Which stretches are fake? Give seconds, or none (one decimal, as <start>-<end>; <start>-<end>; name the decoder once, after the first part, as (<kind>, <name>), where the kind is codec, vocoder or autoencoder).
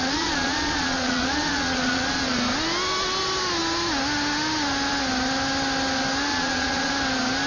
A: 0.0-2.4 (vocoder, Vocos); 6.3-6.9